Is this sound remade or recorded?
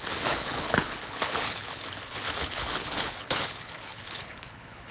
remade